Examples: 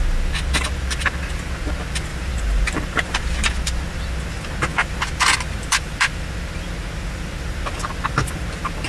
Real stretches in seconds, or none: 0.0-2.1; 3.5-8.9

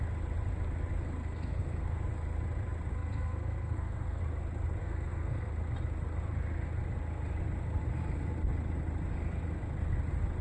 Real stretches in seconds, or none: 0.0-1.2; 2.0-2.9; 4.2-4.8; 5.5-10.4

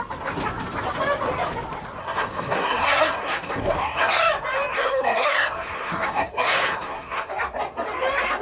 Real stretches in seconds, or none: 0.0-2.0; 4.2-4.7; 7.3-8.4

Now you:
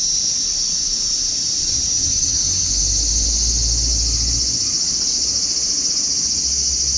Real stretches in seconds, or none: 0.0-1.6; 2.4-7.0

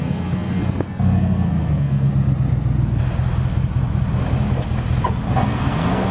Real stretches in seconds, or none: 2.1-5.3

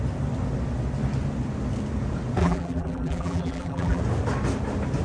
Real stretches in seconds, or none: 0.0-2.4; 4.0-5.0